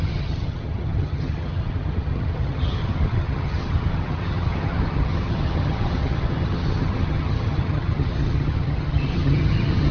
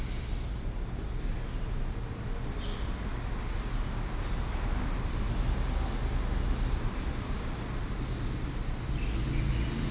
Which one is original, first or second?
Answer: second